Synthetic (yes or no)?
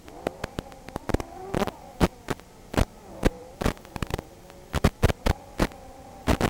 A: no